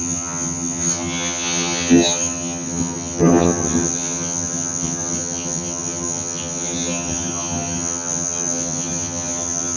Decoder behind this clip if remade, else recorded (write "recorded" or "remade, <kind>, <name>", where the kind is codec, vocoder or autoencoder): remade, vocoder, HiFi-GAN